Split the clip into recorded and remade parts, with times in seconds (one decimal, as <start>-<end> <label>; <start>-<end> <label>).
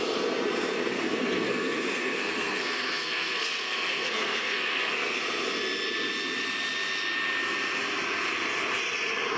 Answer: 0.0-0.9 recorded; 0.9-5.2 remade; 5.2-9.4 recorded